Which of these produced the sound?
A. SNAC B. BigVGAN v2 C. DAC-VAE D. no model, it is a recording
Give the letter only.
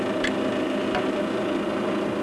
D